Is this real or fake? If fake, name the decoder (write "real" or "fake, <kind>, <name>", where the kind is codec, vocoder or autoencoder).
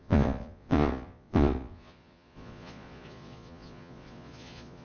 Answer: fake, vocoder, Vocos